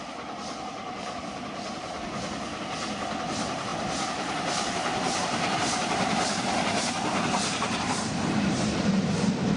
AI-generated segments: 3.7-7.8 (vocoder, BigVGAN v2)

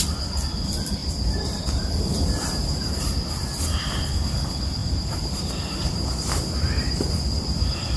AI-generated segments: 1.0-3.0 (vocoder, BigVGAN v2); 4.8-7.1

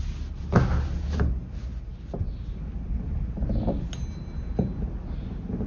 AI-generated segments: none

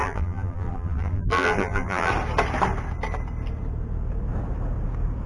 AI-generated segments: 0.0-2.1 (vocoder, BigVGAN v2)

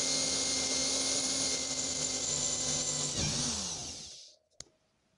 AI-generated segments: 0.8-2.8 (vocoder, BigVGAN v2); 3.8-4.5

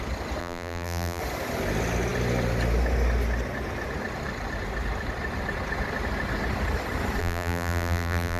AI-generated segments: 0.4-1.2 (vocoder, BigVGAN v2); 7.2-8.4